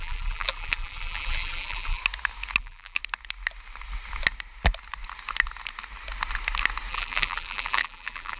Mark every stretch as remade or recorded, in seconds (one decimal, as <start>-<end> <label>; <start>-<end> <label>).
0.0-2.0 remade; 2.0-2.6 recorded; 2.6-3.0 remade; 3.0-6.9 recorded; 6.9-8.4 remade